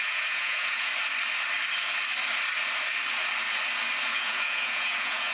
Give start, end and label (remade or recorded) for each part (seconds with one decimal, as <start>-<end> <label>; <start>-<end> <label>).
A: 0.0-0.9 remade; 0.9-4.1 recorded; 4.1-5.3 remade